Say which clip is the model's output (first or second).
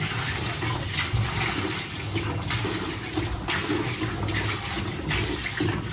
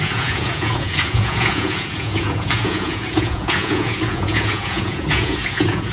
second